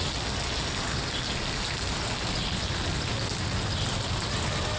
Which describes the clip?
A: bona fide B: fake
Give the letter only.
A